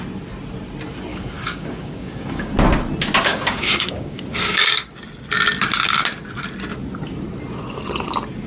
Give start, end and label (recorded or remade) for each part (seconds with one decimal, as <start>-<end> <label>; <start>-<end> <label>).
0.0-1.1 recorded; 1.1-2.5 remade; 2.5-3.3 recorded; 3.3-4.9 remade; 4.9-8.5 recorded